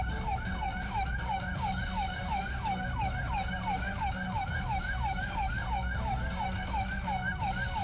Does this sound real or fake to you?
fake